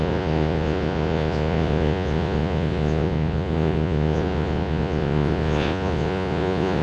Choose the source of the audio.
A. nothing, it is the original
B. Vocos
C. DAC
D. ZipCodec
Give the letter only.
B